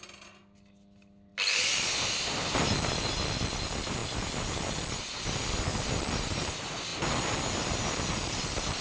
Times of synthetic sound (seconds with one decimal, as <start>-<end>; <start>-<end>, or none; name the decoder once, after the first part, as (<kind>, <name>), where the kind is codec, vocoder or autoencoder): none